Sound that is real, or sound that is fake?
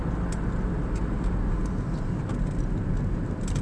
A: real